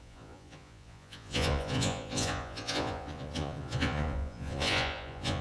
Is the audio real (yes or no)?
no